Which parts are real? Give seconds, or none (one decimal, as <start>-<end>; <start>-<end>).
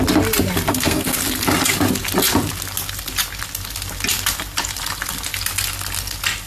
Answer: 0.0-0.7; 1.2-6.5